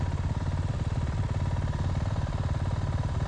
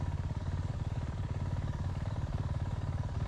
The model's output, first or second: second